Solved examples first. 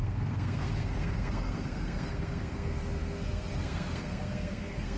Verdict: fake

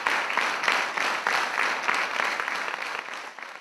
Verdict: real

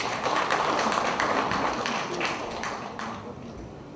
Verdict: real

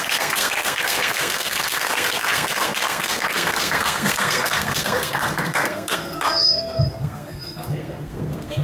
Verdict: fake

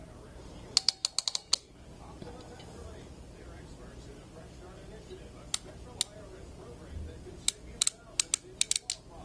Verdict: real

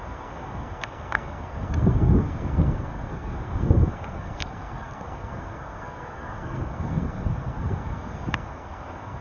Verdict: fake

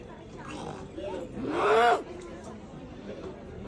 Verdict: real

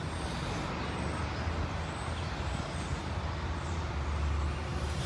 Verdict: real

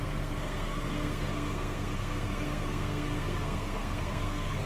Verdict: fake